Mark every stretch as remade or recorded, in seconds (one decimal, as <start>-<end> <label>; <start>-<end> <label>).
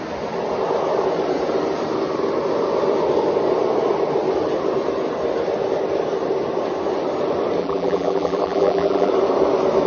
0.0-7.6 recorded; 7.6-9.1 remade; 9.1-9.9 recorded